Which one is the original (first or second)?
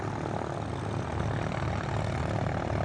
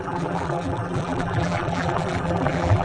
first